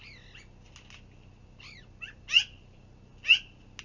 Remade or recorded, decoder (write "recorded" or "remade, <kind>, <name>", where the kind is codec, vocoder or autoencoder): recorded